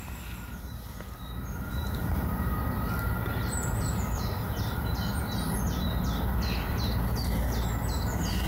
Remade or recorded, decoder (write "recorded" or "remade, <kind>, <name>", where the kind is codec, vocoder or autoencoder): recorded